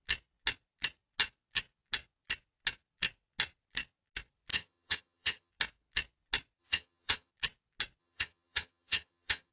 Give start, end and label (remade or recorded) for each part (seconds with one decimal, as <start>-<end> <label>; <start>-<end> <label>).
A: 0.0-4.5 recorded; 4.5-5.5 remade; 5.5-6.6 recorded; 6.6-7.3 remade; 7.3-8.0 recorded; 8.0-9.5 remade